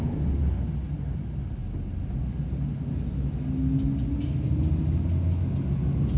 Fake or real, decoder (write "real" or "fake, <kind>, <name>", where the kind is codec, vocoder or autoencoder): real